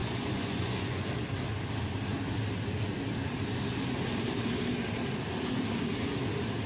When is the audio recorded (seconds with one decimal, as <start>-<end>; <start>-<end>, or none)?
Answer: 1.1-6.7